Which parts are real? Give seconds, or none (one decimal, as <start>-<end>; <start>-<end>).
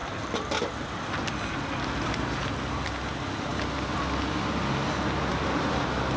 1.3-5.3; 5.8-6.2